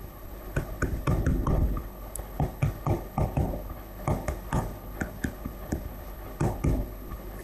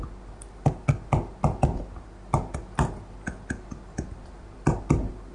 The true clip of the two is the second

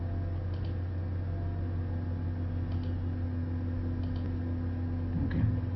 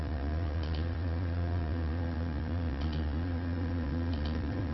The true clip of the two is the first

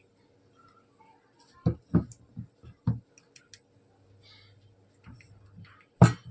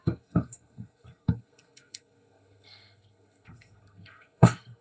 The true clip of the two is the first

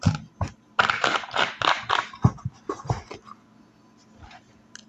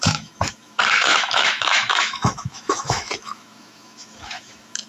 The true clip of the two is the first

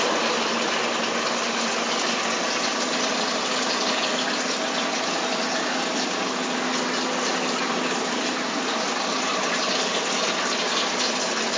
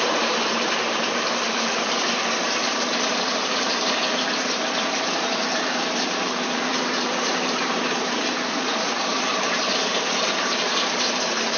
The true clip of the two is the first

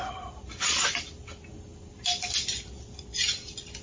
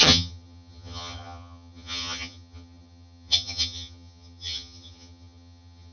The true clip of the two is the first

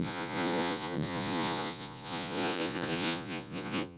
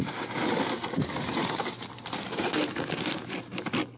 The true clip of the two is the second